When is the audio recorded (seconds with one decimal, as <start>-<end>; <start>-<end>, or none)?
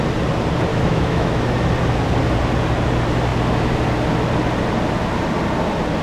0.0-0.7; 1.4-6.0